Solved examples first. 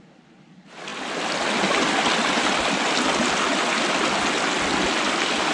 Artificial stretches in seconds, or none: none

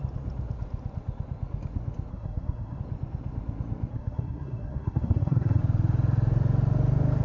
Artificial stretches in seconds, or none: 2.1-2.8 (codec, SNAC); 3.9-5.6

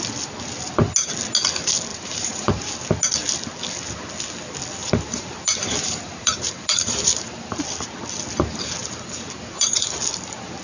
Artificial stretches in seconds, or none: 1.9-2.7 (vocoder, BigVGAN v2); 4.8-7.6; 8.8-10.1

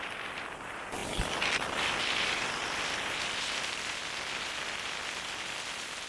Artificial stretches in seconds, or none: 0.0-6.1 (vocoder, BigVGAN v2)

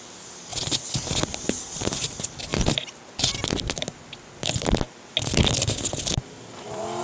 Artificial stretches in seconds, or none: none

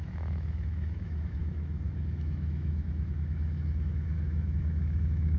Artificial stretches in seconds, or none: 0.0-5.4 (autoencoder, DAC-VAE)

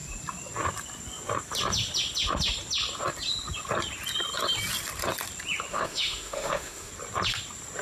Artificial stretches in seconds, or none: 5.7-6.9 (autoencoder, DAC-VAE)

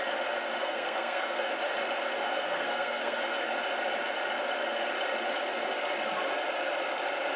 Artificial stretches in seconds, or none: 0.6-1.5 (codec, SNAC); 2.2-3.5